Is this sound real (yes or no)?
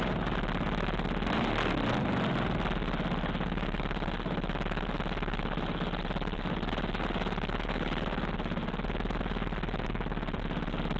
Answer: yes